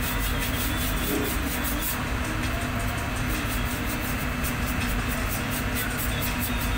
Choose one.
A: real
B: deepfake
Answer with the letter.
A